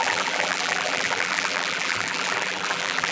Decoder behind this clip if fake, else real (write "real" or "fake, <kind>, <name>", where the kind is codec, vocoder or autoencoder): fake, vocoder, BigVGAN v2